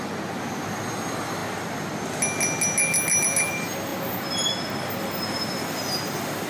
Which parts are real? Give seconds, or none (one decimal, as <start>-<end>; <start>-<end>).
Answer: 0.0-6.5